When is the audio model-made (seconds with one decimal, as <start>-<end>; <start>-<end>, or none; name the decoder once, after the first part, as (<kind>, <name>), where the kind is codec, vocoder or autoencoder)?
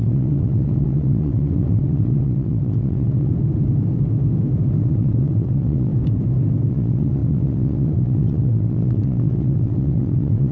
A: 0.0-3.3 (vocoder, WaveNeXt); 4.8-5.9; 6.7-10.5